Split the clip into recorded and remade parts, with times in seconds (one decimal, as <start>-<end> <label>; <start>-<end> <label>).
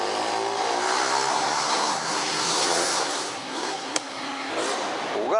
0.0-1.3 recorded; 1.3-4.5 remade; 4.5-5.4 recorded